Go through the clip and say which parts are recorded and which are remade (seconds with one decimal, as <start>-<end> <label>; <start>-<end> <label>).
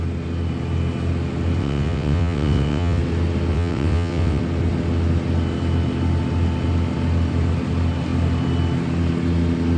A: 0.0-1.6 recorded; 1.6-3.0 remade; 3.0-3.5 recorded; 3.5-4.4 remade; 4.4-9.8 recorded